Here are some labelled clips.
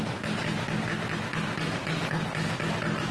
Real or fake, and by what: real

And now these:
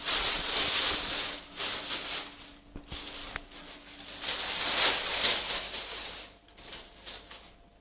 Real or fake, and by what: real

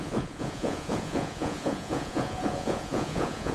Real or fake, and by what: fake, vocoder, Vocos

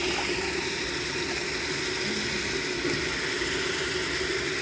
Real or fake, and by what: real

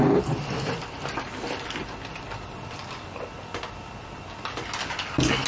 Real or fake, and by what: real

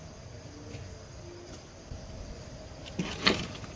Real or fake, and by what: real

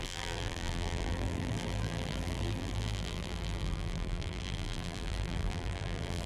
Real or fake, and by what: fake, vocoder, BigVGAN v2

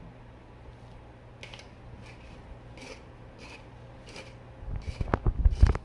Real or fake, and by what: real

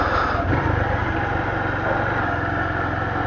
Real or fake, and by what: real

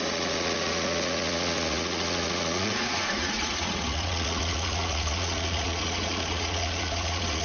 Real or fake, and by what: fake, vocoder, Vocos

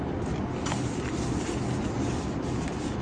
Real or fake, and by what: real